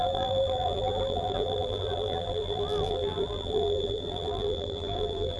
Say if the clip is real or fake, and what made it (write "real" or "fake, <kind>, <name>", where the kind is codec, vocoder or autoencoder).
fake, vocoder, BigVGAN v2